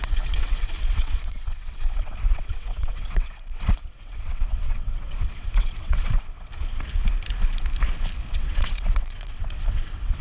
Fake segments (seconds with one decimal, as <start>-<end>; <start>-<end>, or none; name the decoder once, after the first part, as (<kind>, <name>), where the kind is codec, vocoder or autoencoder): 0.0-6.5 (vocoder, WaveNeXt); 8.3-10.2